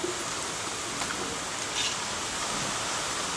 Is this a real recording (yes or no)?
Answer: yes